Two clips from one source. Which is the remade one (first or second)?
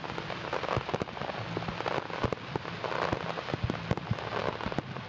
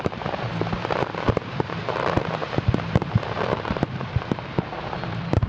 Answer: second